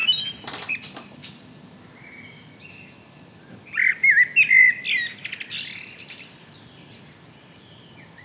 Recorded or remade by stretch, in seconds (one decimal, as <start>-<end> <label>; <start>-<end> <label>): 0.0-1.2 remade; 1.2-2.9 recorded; 2.9-3.9 remade; 3.9-5.2 recorded; 5.2-8.2 remade